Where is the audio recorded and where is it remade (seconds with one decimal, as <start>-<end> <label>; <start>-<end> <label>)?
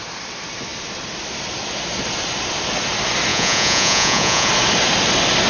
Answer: 0.0-3.3 recorded; 3.3-4.5 remade; 4.5-5.5 recorded